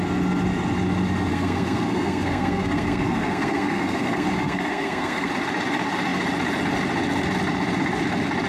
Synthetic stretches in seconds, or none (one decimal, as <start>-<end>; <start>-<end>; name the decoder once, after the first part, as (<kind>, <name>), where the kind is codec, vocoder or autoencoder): 1.3-5.3 (codec, SNAC)